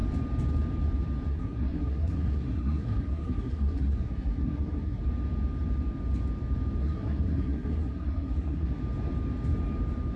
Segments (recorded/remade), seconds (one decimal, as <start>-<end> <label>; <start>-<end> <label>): 0.0-1.3 recorded; 1.3-5.0 remade; 5.0-6.8 recorded; 6.8-8.8 remade; 8.8-10.2 recorded